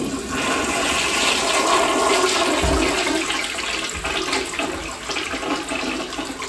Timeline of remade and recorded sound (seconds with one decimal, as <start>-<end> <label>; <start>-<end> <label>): 0.0-0.6 recorded; 0.6-1.3 remade; 1.3-6.5 recorded